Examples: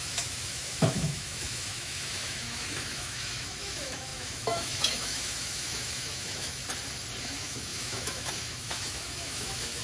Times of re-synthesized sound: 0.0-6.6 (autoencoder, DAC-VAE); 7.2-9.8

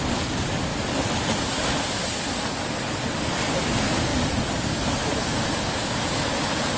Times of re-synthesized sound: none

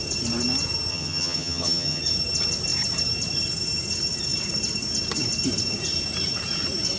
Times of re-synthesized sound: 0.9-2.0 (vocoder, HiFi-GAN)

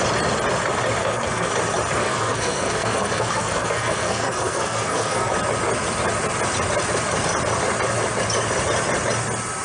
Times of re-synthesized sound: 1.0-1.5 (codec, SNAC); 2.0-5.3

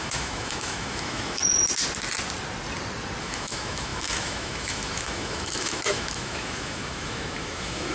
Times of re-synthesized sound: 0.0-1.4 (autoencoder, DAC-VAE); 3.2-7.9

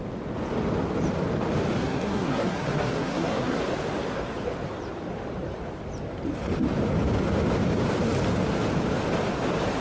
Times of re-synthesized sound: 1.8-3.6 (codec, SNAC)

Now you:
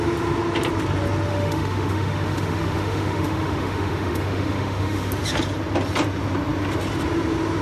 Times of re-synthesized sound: 1.3-5.1 (autoencoder, DAC-VAE)

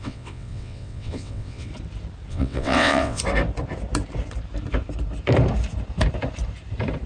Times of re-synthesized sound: 0.0-1.7 (vocoder, WaveNeXt); 2.3-3.2